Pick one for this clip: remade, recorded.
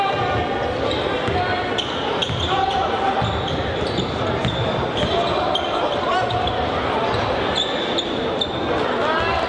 recorded